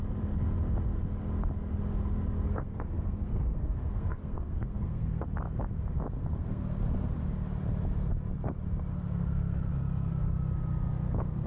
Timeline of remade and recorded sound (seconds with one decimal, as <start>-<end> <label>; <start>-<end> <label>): 0.0-2.5 recorded; 2.5-5.2 remade; 5.2-6.2 recorded; 6.2-6.8 remade; 6.8-8.9 recorded; 8.9-10.1 remade; 10.1-11.5 recorded